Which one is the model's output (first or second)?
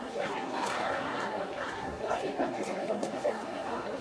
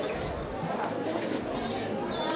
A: first